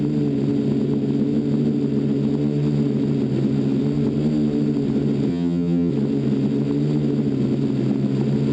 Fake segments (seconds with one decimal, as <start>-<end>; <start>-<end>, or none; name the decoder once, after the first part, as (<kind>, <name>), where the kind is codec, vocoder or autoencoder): 5.3-5.9 (vocoder, HiFi-GAN)